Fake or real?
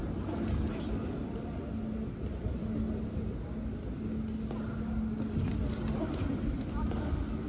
real